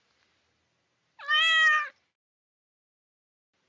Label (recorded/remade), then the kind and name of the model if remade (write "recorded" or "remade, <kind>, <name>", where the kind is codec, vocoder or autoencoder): recorded